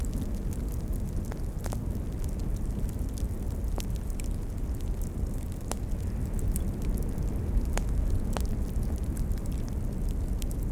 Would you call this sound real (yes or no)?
yes